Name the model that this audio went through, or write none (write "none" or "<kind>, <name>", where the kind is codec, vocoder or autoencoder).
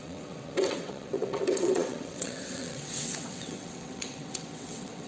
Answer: vocoder, WaveNeXt